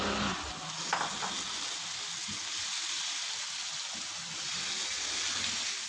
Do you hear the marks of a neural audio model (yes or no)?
no